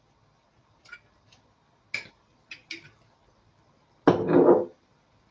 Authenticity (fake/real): real